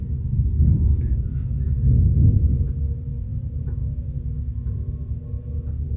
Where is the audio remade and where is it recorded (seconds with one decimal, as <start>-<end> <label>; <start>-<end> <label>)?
0.0-3.8 remade; 3.8-4.5 recorded; 4.5-6.0 remade

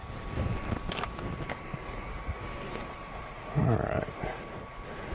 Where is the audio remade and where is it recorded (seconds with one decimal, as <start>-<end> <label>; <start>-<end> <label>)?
0.0-1.7 recorded; 1.7-2.5 remade; 2.5-3.0 recorded; 3.0-4.4 remade; 4.4-5.1 recorded

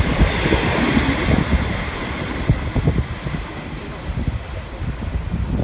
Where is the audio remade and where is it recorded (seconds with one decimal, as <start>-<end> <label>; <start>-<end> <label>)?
0.0-5.6 recorded

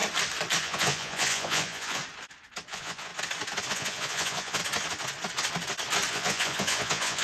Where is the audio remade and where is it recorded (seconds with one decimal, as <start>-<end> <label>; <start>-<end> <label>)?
0.0-0.6 recorded; 0.6-2.0 remade; 2.0-2.7 recorded; 2.7-3.1 remade; 3.1-3.7 recorded; 3.7-4.6 remade; 4.6-6.1 recorded; 6.1-7.2 remade

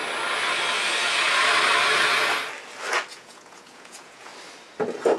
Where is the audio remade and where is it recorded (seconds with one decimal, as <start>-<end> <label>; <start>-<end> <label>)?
0.0-3.1 recorded; 3.1-4.3 remade; 4.3-5.2 recorded

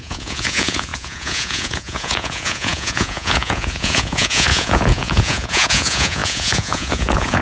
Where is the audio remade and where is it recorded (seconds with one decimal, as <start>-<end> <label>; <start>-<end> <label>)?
0.0-7.4 remade